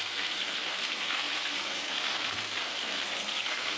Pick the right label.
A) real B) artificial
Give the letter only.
B